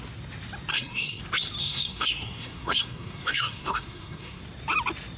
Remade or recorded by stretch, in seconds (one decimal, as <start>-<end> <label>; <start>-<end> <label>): 0.0-0.7 recorded; 0.7-1.2 remade; 1.2-1.6 recorded; 1.6-4.4 remade; 4.4-5.2 recorded